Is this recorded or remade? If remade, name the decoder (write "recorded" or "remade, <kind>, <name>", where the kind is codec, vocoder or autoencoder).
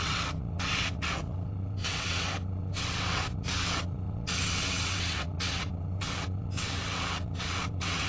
remade, vocoder, WaveNeXt